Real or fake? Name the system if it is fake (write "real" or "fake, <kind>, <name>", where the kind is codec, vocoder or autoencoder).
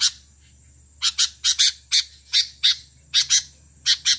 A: real